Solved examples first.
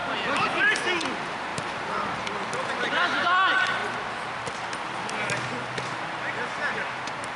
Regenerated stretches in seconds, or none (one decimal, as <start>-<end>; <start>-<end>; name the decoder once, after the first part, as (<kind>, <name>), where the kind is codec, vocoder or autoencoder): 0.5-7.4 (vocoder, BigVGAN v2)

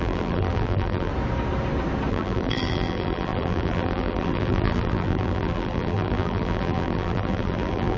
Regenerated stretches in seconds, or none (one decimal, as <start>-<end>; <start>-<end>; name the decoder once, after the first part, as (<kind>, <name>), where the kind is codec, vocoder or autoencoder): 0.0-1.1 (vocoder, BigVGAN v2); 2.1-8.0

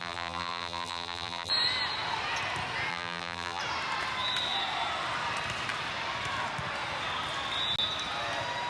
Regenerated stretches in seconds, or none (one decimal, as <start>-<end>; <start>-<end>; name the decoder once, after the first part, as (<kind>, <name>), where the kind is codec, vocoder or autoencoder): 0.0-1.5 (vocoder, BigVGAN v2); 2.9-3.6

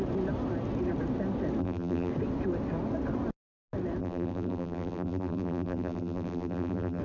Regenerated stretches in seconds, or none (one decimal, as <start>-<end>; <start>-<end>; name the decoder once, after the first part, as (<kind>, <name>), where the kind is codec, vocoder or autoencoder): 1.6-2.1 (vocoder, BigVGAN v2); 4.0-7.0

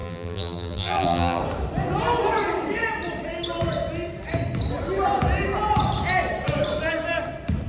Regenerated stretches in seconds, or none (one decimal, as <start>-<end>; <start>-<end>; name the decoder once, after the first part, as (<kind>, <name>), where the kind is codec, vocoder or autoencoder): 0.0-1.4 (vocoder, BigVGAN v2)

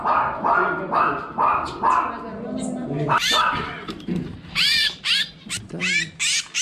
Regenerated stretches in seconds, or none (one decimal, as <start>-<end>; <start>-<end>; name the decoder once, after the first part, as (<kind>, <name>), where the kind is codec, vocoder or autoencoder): 2.8-5.1 (vocoder, BigVGAN v2)